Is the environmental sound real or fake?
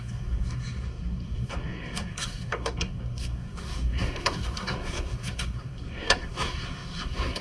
fake